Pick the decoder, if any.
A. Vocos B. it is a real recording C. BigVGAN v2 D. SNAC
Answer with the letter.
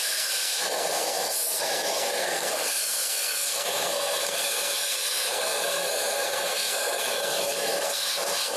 D